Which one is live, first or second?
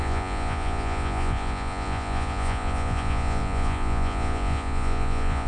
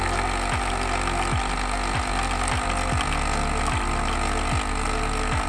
second